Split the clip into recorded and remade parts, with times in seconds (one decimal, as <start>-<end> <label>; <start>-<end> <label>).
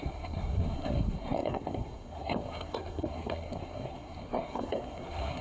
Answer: 0.0-5.4 remade